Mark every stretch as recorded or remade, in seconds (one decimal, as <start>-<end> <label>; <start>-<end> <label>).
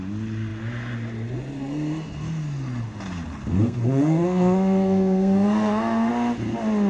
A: 0.0-3.5 recorded; 3.5-6.1 remade; 6.1-6.9 recorded